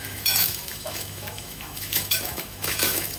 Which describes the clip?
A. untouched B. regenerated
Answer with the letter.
B